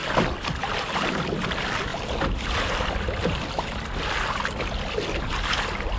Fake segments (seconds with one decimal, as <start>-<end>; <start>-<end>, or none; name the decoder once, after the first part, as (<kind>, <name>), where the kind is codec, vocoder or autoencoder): 0.0-1.4 (vocoder, BigVGAN v2); 1.9-2.9